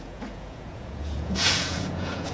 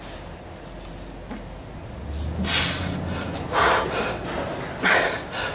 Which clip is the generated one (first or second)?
first